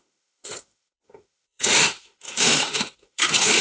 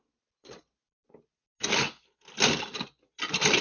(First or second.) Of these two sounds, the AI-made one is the first